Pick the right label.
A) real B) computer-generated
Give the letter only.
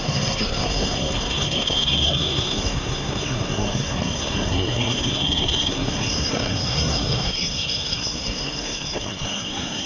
B